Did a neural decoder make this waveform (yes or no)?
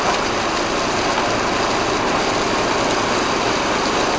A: no